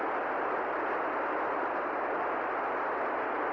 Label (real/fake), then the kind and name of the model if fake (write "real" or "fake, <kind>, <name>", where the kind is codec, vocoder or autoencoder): fake, vocoder, BigVGAN v2